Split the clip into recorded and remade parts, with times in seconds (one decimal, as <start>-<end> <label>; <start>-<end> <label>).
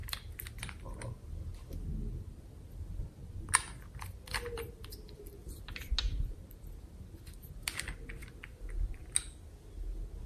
0.0-10.3 recorded